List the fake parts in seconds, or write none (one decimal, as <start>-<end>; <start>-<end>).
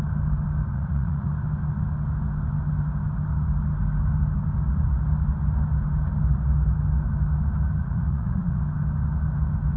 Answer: 0.7-1.3; 7.8-8.6